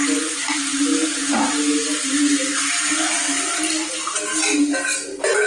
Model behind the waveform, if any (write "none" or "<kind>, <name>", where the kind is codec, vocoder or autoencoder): none